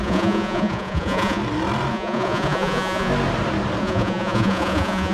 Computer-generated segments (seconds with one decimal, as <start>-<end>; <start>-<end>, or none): 0.0-1.4; 1.9-3.1; 3.8-5.1

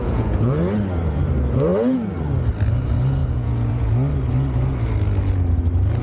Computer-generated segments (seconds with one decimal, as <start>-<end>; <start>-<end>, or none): 0.0-0.6; 3.2-3.9

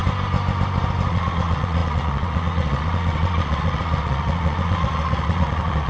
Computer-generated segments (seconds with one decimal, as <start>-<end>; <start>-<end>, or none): 1.1-5.9

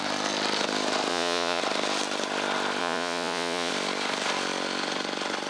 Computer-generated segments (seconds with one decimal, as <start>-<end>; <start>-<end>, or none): 1.1-1.6; 2.8-3.7

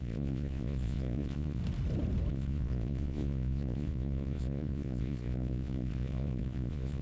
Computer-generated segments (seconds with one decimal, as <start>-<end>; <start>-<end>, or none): 0.0-1.6; 2.3-7.0

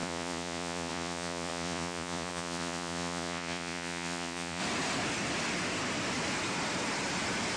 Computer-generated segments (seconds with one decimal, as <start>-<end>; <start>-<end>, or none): 0.0-4.6

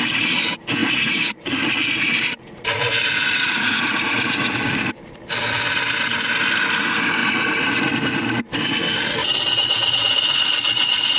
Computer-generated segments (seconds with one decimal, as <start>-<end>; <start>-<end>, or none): 0.8-4.9; 7.2-7.9; 9.2-11.2